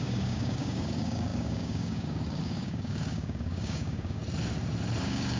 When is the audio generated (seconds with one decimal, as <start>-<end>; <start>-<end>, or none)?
0.0-4.2; 5.0-5.4